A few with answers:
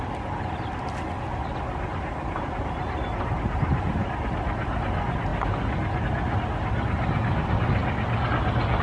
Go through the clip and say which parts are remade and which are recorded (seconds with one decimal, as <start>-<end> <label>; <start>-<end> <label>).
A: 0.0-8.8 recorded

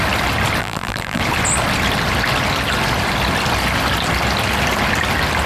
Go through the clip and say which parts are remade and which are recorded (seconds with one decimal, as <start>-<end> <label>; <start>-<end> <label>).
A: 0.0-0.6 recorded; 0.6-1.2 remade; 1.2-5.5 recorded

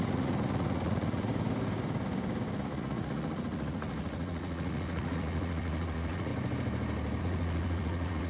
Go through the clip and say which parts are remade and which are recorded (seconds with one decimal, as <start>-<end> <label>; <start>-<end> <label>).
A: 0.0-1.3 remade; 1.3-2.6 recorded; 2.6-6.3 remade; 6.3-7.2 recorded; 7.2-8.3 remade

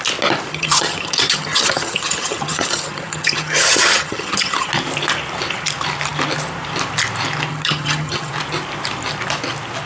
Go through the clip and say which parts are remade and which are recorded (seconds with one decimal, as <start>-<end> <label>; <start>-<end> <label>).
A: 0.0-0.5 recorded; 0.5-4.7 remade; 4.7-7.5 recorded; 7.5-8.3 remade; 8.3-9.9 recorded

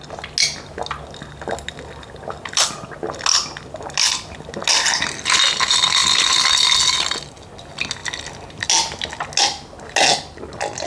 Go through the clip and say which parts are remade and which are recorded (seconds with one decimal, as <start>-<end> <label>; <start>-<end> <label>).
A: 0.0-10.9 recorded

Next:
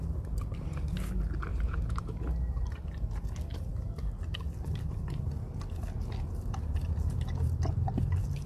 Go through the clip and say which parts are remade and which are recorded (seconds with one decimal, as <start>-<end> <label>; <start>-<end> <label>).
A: 0.0-1.5 recorded; 1.5-2.2 remade; 2.2-8.5 recorded

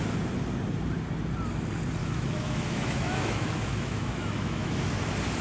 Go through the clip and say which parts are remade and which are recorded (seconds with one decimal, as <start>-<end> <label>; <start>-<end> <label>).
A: 0.0-2.0 recorded; 2.0-5.0 remade; 5.0-5.4 recorded

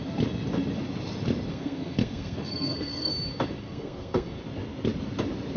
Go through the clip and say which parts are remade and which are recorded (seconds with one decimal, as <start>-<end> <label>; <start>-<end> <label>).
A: 0.0-1.5 recorded; 1.5-3.1 remade; 3.1-3.6 recorded; 3.6-4.4 remade; 4.4-5.6 recorded